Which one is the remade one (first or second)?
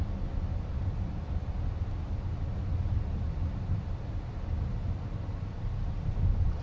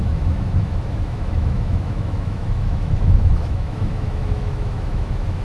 second